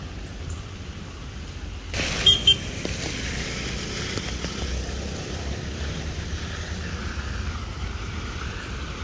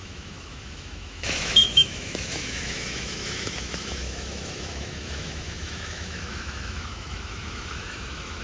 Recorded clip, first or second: first